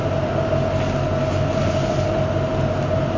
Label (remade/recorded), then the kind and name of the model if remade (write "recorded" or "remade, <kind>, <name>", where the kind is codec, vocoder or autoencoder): recorded